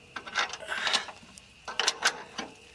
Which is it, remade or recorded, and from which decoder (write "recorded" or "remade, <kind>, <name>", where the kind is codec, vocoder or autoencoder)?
recorded